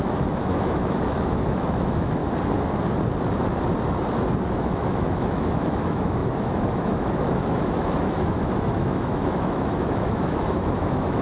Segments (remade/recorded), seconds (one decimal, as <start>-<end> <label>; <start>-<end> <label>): 0.0-2.2 remade; 2.2-4.5 recorded; 4.5-11.2 remade